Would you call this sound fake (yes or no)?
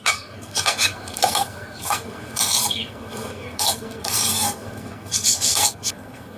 yes